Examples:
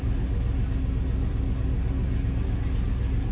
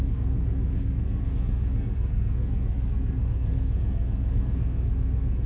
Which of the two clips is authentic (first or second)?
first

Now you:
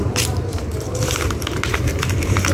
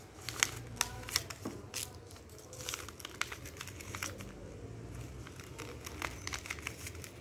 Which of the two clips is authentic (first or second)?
second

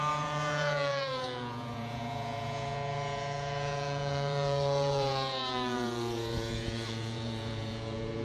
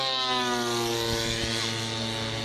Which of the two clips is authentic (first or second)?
second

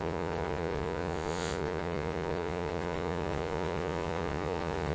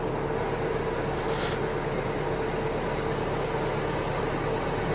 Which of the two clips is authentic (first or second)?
second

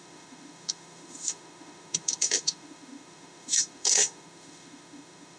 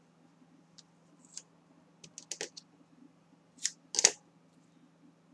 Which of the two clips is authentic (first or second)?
second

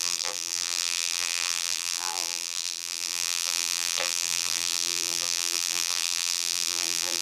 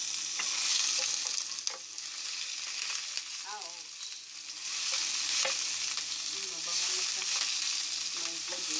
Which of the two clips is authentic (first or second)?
second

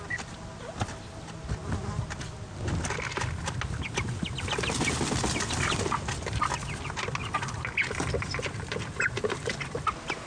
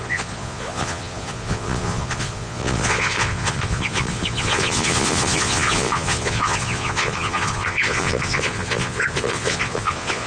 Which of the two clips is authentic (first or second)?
first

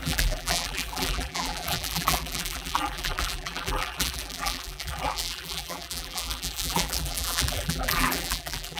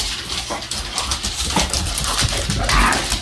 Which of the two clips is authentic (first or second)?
second